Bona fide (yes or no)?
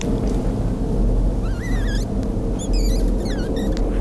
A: yes